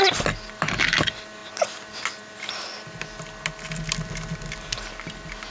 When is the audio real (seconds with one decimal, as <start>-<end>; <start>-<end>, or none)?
0.0-5.5